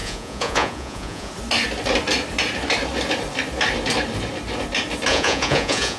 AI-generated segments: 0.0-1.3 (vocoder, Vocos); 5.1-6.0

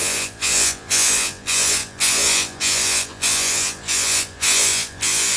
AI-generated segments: 0.0-5.4 (vocoder, Vocos)

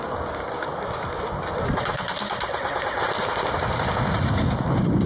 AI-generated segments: none

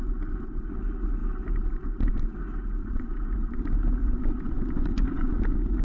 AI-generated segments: 2.8-3.6 (vocoder, Vocos); 4.0-5.3

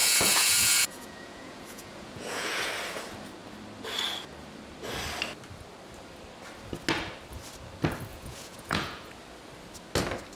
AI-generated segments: 0.0-2.7 (vocoder, Vocos); 8.1-9.1

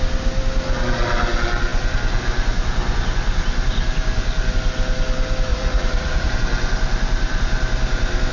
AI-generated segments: 5.5-6.3 (vocoder, Vocos)